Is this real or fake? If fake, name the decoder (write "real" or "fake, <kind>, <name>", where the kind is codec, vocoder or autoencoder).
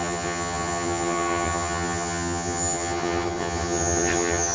fake, vocoder, HiFi-GAN